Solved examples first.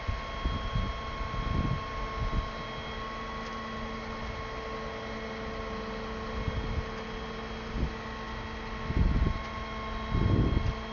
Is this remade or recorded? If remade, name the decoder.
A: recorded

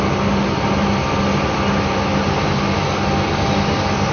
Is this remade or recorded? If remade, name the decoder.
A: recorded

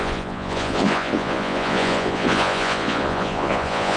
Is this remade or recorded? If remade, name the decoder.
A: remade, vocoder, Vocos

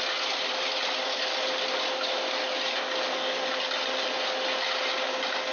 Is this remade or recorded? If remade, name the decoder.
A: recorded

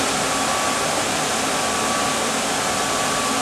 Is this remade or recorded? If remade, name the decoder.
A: recorded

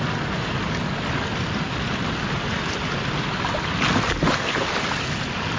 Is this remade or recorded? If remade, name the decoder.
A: recorded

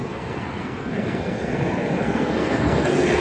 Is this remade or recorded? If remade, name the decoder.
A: remade, codec, SNAC